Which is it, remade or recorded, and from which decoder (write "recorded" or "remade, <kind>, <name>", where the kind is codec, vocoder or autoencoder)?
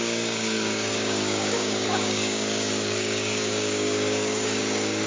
remade, codec, DAC